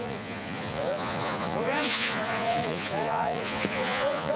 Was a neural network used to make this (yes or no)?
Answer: yes